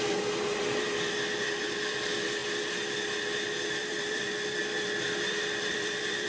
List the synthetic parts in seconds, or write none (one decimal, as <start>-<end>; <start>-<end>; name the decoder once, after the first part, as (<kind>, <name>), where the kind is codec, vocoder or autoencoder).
0.0-2.4 (vocoder, BigVGAN v2); 3.7-6.3